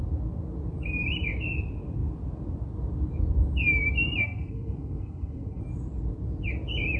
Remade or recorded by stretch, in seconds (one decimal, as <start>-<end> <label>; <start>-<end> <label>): 0.0-4.2 recorded; 4.2-5.6 remade; 5.6-7.0 recorded